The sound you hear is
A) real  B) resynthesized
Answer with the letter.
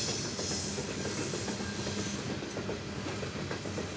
A